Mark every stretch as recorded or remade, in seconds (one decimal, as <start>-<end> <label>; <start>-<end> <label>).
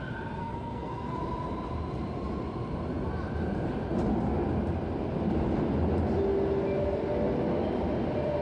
0.0-0.4 recorded; 0.4-1.2 remade; 1.2-8.4 recorded